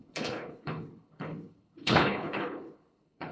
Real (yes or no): no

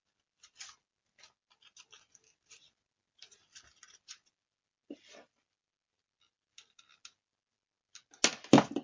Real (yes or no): yes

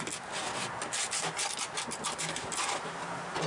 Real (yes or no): yes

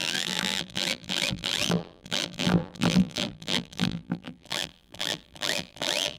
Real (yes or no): no